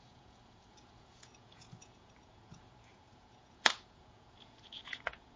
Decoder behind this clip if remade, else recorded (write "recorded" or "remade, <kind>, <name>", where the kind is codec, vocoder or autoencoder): remade, vocoder, Vocos